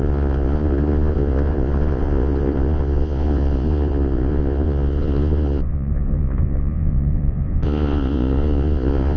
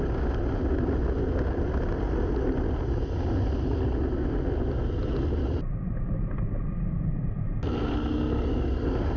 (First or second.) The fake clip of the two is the first